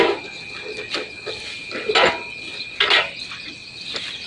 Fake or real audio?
real